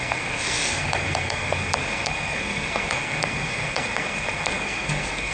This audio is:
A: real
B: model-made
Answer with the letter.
B